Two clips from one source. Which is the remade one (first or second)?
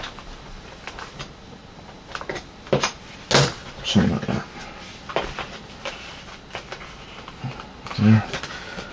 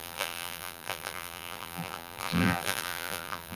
second